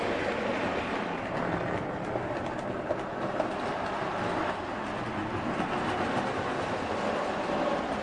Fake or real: real